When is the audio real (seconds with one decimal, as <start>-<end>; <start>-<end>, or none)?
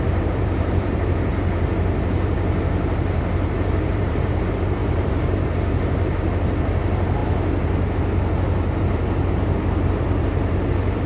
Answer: 1.3-3.8; 7.2-9.3